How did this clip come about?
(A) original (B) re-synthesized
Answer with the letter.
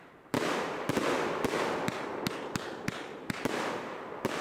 B